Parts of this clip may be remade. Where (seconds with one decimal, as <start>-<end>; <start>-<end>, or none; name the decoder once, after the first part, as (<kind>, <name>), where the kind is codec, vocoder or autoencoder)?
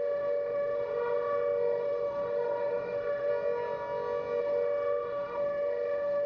0.0-3.3 (autoencoder, DAC-VAE); 4.4-6.3